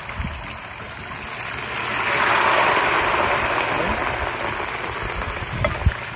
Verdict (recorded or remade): recorded